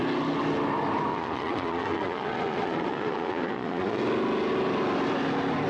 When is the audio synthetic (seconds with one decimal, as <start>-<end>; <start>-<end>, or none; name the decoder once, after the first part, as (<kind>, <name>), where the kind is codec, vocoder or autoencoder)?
1.1-4.0 (vocoder, Vocos)